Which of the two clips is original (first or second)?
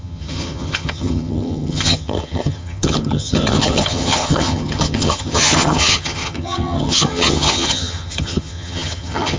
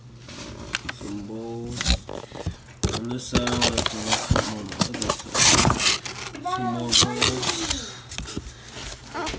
second